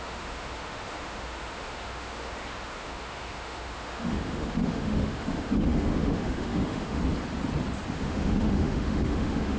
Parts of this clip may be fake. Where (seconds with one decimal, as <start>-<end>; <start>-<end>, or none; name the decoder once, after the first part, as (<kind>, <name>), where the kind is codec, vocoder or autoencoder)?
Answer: 0.0-7.0 (autoencoder, DAC-VAE); 7.9-9.6